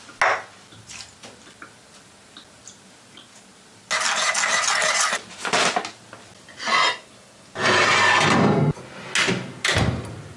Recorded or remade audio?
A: recorded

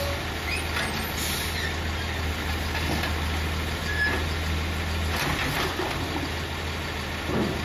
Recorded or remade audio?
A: recorded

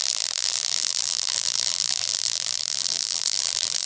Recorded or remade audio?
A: remade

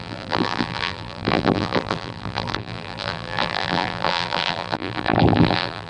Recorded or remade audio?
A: remade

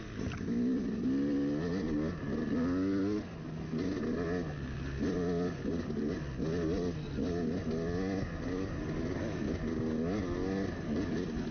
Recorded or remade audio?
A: recorded